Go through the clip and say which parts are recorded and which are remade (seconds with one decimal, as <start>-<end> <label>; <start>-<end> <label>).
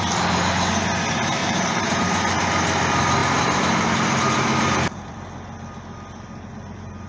0.0-1.4 recorded; 1.4-2.0 remade; 2.0-3.2 recorded; 3.2-5.1 remade; 5.1-7.1 recorded